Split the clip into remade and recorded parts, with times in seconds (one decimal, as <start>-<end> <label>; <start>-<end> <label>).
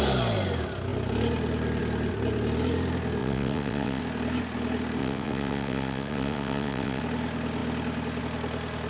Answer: 0.0-3.2 recorded; 3.2-4.0 remade; 4.0-5.0 recorded; 5.0-7.0 remade; 7.0-8.9 recorded